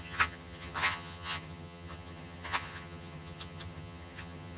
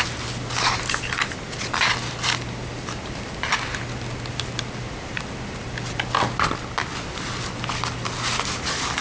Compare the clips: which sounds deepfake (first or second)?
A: first